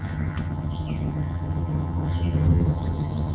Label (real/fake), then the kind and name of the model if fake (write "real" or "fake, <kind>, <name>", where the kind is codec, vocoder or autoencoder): fake, vocoder, HiFi-GAN